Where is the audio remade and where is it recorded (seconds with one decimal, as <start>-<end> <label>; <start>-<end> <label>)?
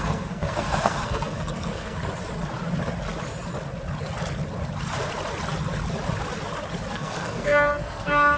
0.0-2.0 remade; 2.0-6.9 recorded; 6.9-8.4 remade